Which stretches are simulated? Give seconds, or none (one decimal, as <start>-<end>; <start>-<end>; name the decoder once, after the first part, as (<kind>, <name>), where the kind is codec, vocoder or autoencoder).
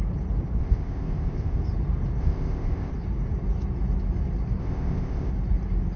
0.6-1.6 (codec, ZipCodec); 2.2-2.9; 4.6-5.3